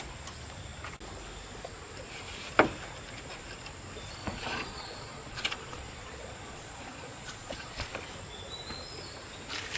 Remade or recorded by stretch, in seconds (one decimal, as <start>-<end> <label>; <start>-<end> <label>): 0.0-4.2 recorded; 4.2-7.9 remade; 7.9-9.8 recorded